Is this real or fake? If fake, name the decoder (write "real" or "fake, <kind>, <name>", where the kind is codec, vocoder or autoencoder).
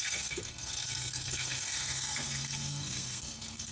fake, codec, SNAC